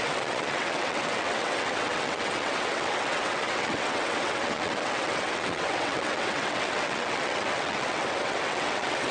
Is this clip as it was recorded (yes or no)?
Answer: no